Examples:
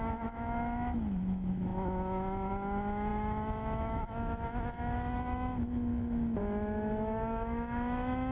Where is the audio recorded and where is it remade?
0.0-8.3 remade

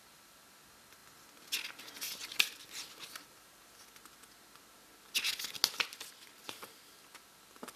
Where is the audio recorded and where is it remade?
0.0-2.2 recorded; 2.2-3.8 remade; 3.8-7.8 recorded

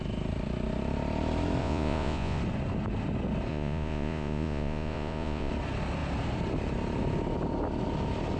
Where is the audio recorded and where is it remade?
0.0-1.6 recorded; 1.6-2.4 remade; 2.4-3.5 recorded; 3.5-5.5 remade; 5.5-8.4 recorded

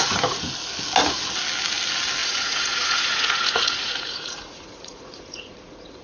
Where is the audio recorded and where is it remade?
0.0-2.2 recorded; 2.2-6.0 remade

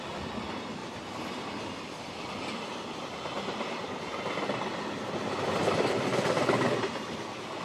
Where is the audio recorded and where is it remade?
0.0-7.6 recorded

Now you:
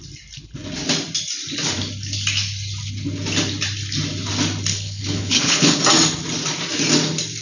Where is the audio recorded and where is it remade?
0.0-4.7 recorded; 4.7-5.8 remade; 5.8-7.4 recorded